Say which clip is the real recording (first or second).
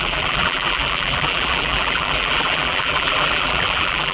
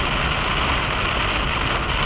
second